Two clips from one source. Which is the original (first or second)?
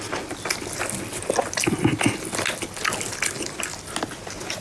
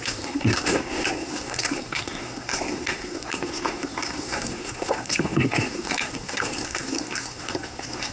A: first